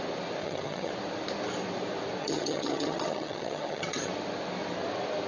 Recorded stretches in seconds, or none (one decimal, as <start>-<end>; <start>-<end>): 0.0-0.4; 0.9-2.2; 4.1-5.3